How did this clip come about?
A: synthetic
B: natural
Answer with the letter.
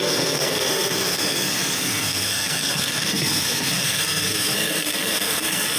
A